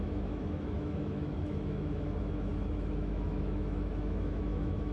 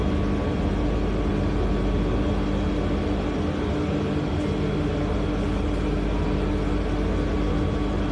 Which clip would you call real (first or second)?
second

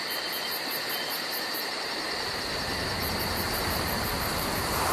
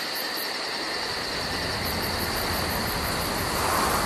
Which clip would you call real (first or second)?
second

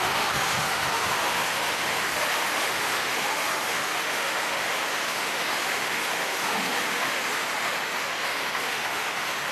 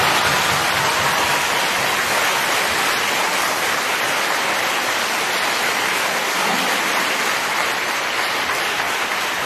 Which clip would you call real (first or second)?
second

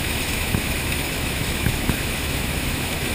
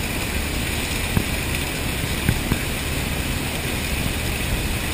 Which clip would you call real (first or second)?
second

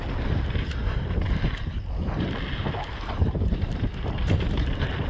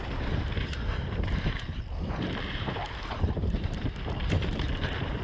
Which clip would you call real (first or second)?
first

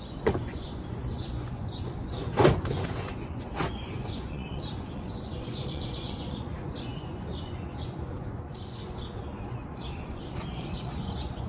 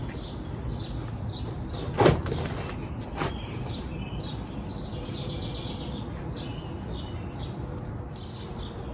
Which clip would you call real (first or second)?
second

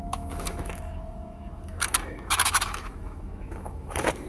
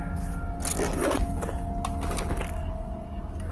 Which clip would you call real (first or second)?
second